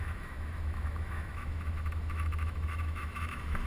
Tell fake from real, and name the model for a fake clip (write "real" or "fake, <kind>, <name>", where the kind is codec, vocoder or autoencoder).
fake, autoencoder, DAC-VAE